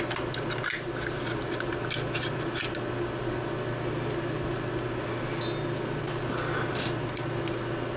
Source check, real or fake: real